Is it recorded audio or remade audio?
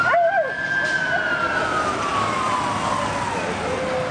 recorded